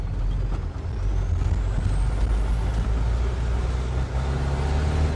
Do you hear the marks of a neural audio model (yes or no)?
no